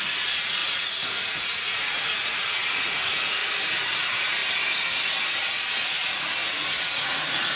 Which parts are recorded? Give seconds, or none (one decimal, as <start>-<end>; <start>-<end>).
3.4-4.0; 4.4-5.8